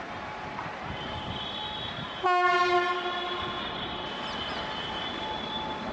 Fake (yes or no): no